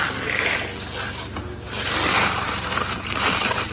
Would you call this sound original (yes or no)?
yes